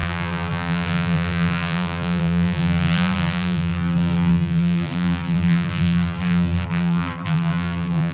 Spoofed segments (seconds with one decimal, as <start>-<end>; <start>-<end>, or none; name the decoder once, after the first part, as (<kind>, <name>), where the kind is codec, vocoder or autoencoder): 0.0-8.1 (vocoder, BigVGAN v2)

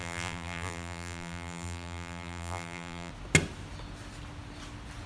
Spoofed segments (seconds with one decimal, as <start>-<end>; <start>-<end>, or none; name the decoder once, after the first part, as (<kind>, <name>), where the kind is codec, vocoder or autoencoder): 0.0-3.1 (vocoder, BigVGAN v2)

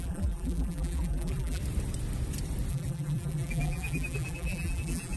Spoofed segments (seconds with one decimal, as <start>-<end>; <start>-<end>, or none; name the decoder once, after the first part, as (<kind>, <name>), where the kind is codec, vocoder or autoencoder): 0.0-1.6 (vocoder, BigVGAN v2); 2.7-5.2

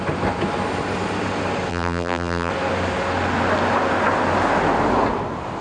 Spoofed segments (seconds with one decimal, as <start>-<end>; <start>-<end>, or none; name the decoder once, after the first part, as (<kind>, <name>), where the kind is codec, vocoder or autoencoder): 1.7-2.5 (vocoder, BigVGAN v2)